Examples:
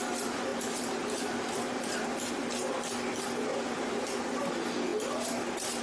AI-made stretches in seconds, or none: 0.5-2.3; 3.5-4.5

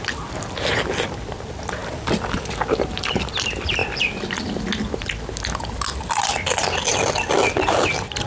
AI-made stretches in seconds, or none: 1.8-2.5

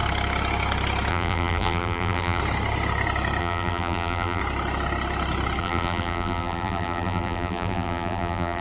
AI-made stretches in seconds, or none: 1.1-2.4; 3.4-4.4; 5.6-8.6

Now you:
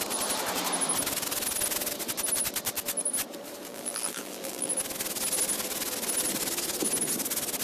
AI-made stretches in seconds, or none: 3.7-4.7

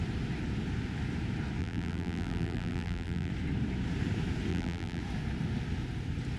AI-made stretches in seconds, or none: 1.6-3.3; 4.5-5.0

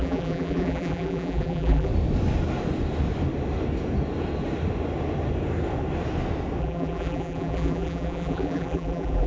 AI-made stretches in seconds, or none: 0.0-1.9; 6.6-9.3

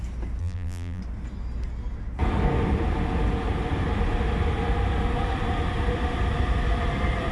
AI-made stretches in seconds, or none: 0.4-1.0

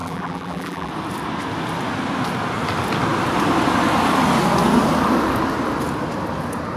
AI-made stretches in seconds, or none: 0.0-0.9